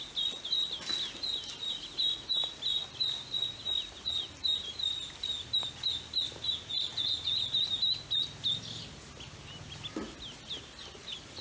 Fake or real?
real